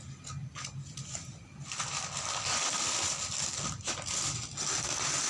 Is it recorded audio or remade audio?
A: recorded